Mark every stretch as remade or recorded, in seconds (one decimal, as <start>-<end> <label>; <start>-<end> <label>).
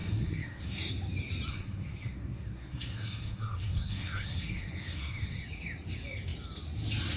0.0-0.9 remade; 0.9-1.5 recorded; 1.5-5.4 remade; 5.4-7.2 recorded